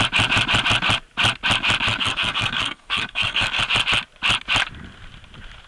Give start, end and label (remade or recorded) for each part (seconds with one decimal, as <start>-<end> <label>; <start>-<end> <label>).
0.0-1.9 recorded; 1.9-3.6 remade; 3.6-5.7 recorded